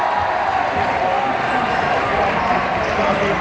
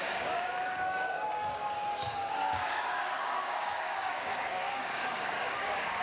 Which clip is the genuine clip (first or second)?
first